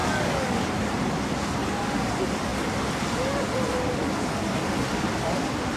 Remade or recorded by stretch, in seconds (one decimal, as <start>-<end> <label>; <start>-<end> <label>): 0.0-0.7 remade; 0.7-1.6 recorded; 1.6-2.1 remade; 2.1-5.8 recorded